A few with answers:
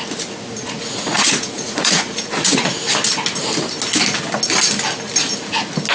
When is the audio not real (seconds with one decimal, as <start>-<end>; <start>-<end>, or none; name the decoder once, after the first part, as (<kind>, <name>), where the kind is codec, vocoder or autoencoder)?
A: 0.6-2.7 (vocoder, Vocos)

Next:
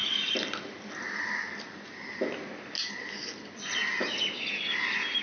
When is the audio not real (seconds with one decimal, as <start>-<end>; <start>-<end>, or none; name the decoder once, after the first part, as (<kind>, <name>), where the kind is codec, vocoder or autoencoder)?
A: none

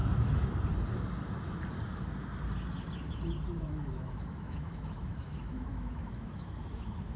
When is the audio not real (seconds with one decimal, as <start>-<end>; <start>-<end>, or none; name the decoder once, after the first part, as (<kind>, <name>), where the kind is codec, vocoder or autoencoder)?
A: 3.6-7.2 (autoencoder, DAC-VAE)

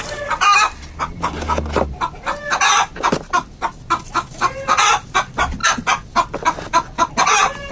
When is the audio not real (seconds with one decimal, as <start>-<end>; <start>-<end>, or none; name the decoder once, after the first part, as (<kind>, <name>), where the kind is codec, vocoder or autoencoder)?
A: none

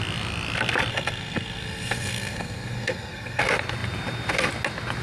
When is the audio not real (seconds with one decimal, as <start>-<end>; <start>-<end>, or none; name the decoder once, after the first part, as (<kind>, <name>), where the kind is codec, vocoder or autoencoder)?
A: 0.9-3.4 (codec, SNAC)

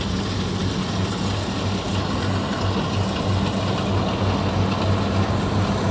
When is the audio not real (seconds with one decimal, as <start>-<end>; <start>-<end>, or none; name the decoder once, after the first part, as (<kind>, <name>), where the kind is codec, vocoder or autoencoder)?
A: none

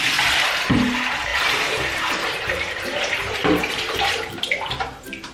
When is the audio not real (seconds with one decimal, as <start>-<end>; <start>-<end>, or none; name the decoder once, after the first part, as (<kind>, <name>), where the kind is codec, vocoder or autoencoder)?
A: 0.0-5.3 (vocoder, BigVGAN v2)

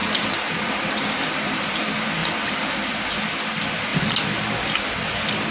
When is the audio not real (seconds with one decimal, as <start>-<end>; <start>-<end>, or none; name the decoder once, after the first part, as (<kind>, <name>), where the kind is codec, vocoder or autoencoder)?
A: 0.0-1.8 (vocoder, BigVGAN v2); 2.2-3.3; 3.9-4.4